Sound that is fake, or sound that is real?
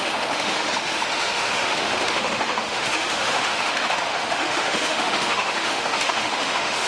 fake